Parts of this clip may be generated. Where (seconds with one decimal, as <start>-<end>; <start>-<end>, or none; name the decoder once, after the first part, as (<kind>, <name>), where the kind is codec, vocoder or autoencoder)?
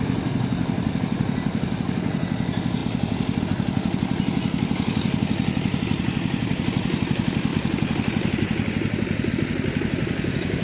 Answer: none